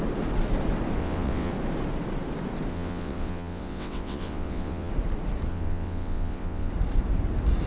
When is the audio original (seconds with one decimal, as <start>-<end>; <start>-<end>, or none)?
0.0-1.0; 1.5-2.7; 4.9-5.5; 6.7-7.7